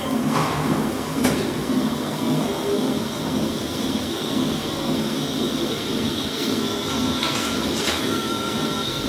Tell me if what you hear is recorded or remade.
remade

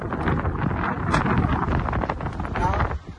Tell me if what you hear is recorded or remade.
recorded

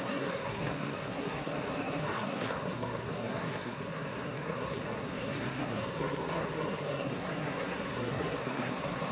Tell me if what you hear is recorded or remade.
remade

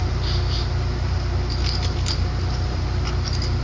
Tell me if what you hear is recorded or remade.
recorded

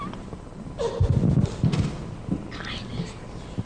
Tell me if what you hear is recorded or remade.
recorded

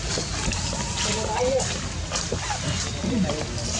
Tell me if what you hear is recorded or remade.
recorded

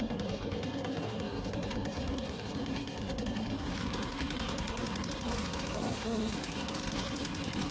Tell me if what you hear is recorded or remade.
remade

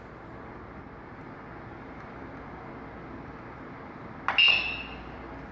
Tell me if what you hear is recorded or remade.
recorded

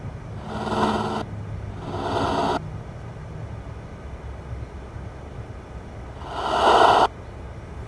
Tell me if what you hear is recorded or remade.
recorded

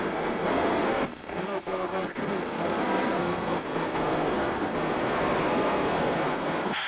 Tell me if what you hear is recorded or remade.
remade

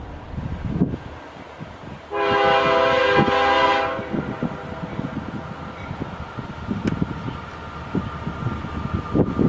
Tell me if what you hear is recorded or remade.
recorded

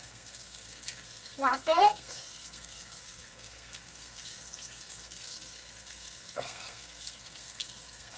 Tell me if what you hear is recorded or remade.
remade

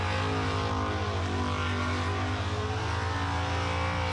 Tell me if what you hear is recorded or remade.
recorded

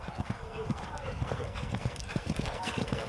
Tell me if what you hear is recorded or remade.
remade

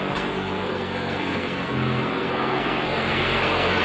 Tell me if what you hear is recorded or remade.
remade